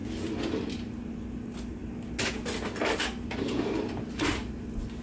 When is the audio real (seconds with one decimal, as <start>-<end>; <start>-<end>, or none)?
0.0-5.0